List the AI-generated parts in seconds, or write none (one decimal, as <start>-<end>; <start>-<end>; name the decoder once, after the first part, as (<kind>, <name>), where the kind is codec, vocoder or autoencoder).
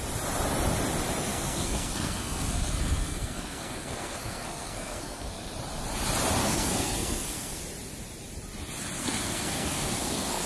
1.3-5.5 (codec, SNAC); 6.4-7.6; 9.0-10.5